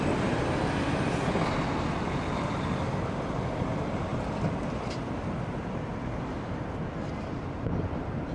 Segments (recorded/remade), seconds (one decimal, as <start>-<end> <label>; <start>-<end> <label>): 0.0-8.3 recorded